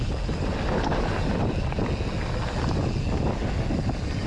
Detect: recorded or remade recorded